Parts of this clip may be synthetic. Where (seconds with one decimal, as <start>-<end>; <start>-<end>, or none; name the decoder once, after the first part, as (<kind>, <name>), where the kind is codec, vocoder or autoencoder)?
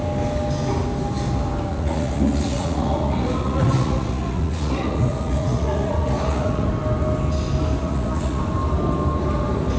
1.7-6.7 (vocoder, Vocos); 7.8-8.4